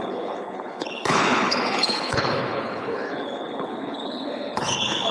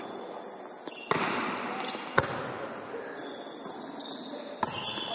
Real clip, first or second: second